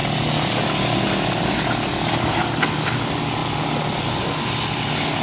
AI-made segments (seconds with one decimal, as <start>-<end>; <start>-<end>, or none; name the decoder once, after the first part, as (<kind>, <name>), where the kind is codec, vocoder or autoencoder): none